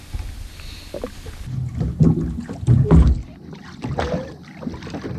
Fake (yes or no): no